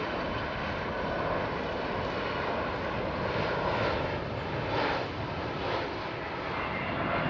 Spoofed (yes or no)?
no